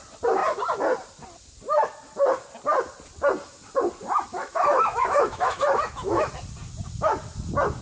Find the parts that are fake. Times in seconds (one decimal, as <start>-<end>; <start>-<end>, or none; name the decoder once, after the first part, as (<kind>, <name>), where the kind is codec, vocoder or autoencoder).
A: 4.3-6.3 (autoencoder, DAC-VAE)